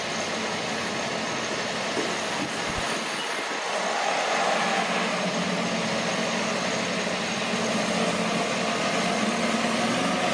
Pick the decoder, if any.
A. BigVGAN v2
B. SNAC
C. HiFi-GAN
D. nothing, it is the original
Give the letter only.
D